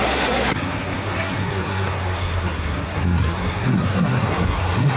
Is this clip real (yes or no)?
no